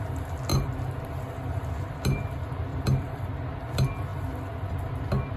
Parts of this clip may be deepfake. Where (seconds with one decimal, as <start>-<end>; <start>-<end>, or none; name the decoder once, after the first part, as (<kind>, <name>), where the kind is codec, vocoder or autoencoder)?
2.7-3.3 (vocoder, BigVGAN v2)